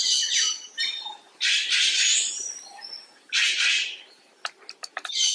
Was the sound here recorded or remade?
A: recorded